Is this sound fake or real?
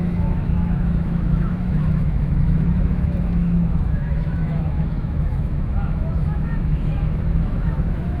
fake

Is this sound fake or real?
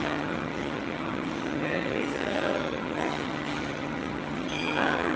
fake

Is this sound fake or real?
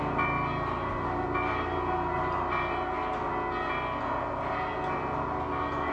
real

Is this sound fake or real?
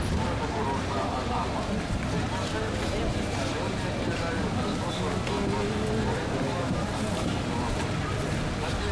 real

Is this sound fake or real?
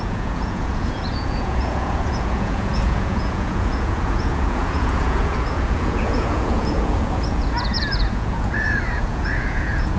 fake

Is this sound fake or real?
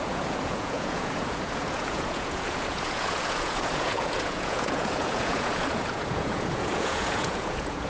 fake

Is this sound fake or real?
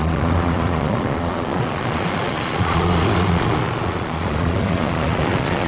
fake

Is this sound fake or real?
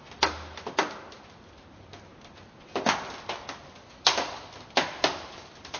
real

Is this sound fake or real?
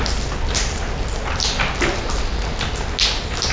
real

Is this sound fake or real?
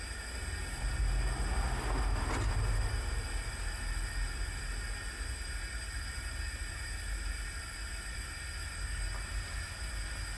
real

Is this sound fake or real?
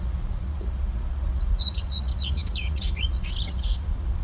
fake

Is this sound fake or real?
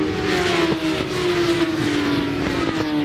real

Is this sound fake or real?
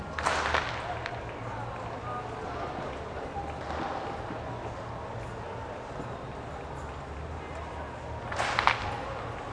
real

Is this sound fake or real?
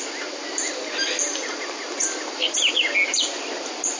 real